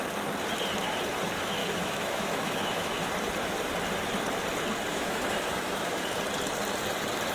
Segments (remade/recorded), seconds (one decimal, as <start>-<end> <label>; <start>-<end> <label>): 0.0-1.6 recorded; 1.6-3.1 remade; 3.1-4.9 recorded; 4.9-6.0 remade; 6.0-7.3 recorded